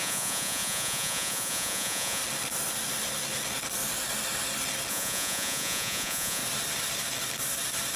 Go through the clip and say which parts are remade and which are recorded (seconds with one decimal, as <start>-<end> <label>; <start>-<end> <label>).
0.0-2.2 remade; 2.2-4.9 recorded; 4.9-6.4 remade; 6.4-8.0 recorded